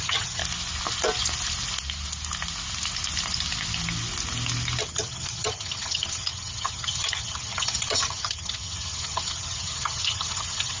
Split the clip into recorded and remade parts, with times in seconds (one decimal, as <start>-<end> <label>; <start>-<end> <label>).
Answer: 0.0-0.4 remade; 0.4-4.8 recorded; 4.8-10.8 remade

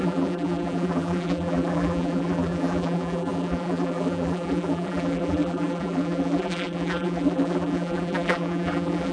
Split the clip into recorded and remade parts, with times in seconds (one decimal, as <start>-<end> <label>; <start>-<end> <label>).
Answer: 0.0-9.1 remade

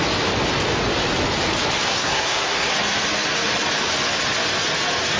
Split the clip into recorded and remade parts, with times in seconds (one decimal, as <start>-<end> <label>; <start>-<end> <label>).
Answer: 0.0-1.9 recorded; 1.9-2.7 remade; 2.7-5.2 recorded